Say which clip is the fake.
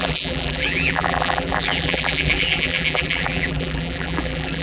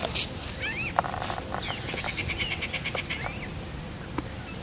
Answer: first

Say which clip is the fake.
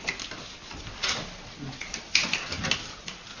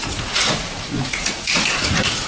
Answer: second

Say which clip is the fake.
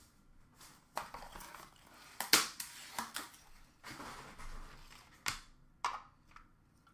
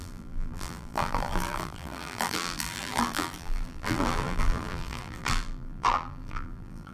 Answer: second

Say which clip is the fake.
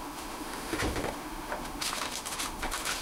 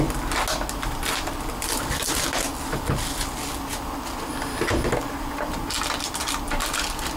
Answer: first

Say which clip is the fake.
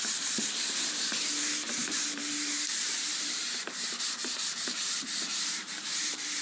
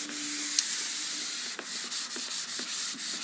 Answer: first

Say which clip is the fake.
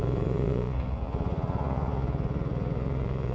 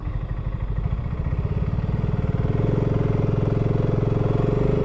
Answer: first